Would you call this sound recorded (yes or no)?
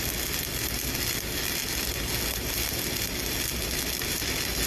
yes